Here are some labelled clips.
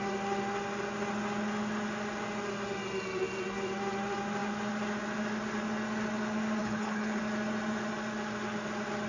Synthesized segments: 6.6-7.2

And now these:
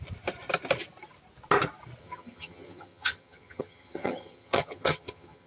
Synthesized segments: 2.0-5.5

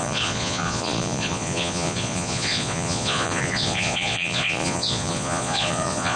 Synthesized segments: 0.0-6.2

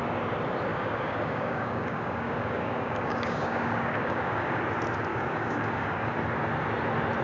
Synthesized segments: 0.7-4.6; 5.1-6.1

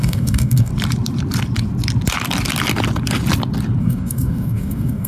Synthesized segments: 0.0-0.7; 3.8-5.1

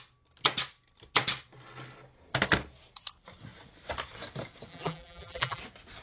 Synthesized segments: 4.7-5.6

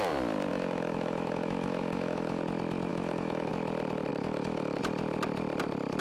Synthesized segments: 0.5-2.4; 2.9-3.5; 4.1-4.8

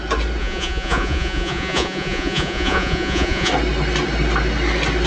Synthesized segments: 0.4-3.5